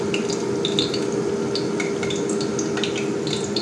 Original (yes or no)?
yes